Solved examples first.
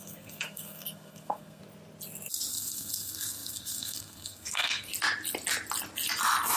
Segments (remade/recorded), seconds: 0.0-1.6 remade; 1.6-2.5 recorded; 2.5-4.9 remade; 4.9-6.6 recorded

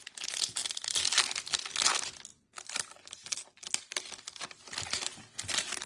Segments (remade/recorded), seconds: 0.0-5.9 recorded

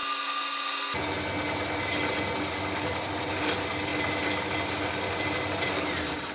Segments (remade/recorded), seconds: 0.0-6.3 recorded

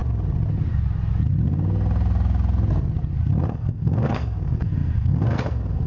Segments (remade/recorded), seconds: 0.0-3.5 recorded; 3.5-5.9 remade

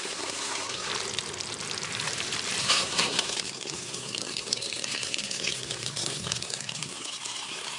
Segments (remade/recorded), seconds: 0.0-0.9 remade; 0.9-2.6 recorded; 2.6-7.8 remade